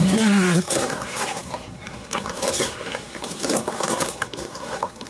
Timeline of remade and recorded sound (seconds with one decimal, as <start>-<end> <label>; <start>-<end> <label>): 0.0-5.1 remade